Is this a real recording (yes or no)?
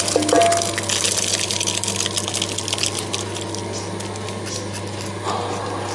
yes